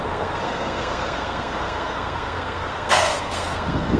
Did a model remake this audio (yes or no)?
yes